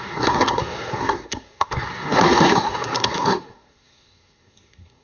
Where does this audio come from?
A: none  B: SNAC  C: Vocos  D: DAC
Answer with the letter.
B